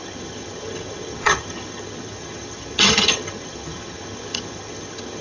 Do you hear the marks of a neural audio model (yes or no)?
yes